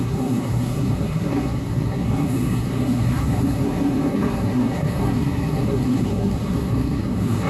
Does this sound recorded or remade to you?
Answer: remade